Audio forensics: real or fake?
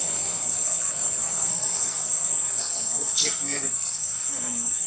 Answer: fake